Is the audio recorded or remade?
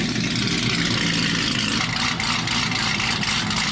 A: recorded